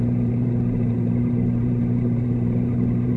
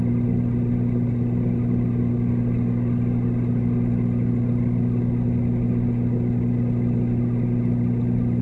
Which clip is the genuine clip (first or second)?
second